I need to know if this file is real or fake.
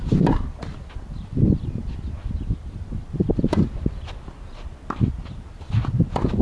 real